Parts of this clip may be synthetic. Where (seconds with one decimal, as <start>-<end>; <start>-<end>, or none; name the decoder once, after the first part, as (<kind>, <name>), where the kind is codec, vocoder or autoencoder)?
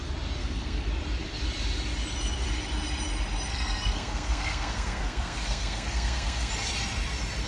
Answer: 0.4-0.9 (codec, SNAC); 3.5-6.5